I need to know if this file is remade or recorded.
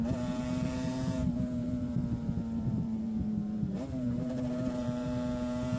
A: remade